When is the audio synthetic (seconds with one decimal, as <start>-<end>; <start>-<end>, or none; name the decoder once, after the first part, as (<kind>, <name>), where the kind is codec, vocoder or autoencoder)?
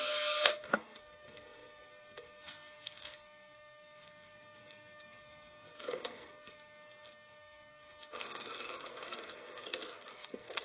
0.0-10.6 (codec, SNAC)